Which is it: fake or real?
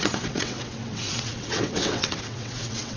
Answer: fake